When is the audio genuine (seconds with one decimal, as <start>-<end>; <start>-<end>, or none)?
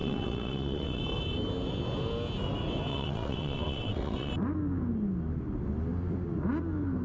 1.0-2.9; 4.3-7.0